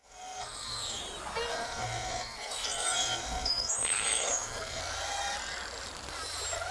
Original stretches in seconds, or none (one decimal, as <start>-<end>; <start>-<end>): 1.0-1.5; 4.8-6.7